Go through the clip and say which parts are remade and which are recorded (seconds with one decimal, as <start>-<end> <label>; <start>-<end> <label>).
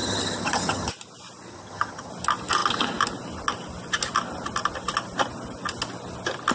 0.0-0.9 remade; 0.9-1.5 recorded; 1.5-2.1 remade; 2.1-6.5 recorded